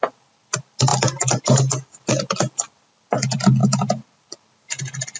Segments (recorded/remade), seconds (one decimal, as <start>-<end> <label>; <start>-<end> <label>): 0.0-5.2 recorded